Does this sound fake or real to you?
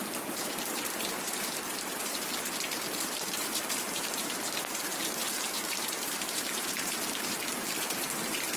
fake